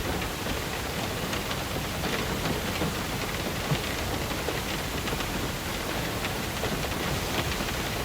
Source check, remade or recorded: recorded